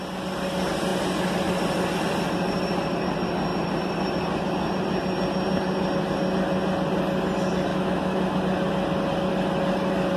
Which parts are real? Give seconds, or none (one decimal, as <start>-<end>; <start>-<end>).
0.0-7.7; 8.4-10.2